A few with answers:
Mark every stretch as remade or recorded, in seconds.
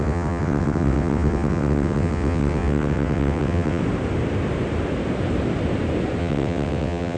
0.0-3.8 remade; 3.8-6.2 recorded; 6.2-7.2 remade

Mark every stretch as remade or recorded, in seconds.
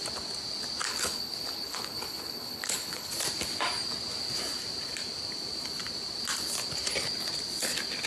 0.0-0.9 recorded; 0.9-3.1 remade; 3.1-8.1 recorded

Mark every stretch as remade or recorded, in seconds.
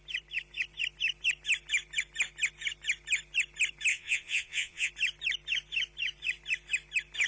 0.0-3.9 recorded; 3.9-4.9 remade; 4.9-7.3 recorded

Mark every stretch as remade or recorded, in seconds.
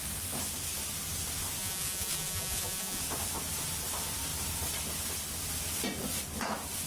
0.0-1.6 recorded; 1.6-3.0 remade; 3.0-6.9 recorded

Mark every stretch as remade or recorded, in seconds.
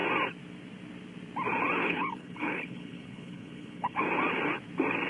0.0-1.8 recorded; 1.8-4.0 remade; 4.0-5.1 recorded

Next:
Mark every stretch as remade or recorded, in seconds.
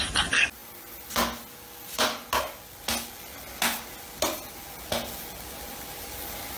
0.0-6.6 recorded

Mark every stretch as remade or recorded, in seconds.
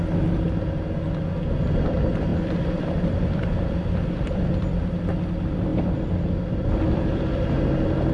0.0-2.3 recorded; 2.3-4.9 remade; 4.9-8.1 recorded